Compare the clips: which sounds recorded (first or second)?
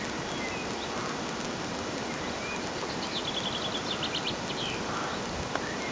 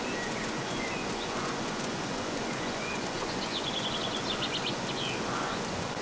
first